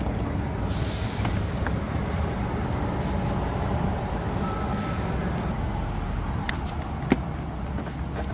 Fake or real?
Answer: real